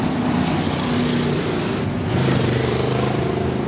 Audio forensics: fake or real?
fake